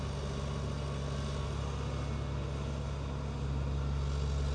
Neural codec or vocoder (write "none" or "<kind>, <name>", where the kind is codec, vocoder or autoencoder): none